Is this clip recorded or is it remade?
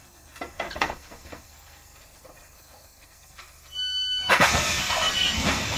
remade